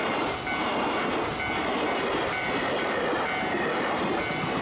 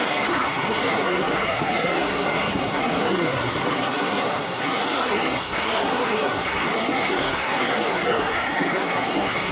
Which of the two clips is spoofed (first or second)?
second